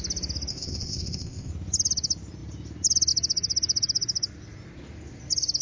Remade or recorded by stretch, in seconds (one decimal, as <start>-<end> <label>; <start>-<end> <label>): 0.0-0.5 recorded; 0.5-1.5 remade; 1.5-5.6 recorded